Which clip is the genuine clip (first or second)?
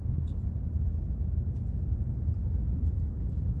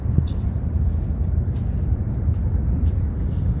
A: first